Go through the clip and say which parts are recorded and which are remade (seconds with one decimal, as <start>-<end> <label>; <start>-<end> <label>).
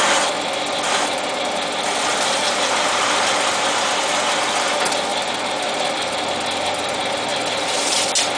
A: 0.0-2.0 recorded; 2.0-3.2 remade; 3.2-5.1 recorded; 5.1-6.6 remade; 6.6-7.3 recorded; 7.3-7.9 remade; 7.9-8.4 recorded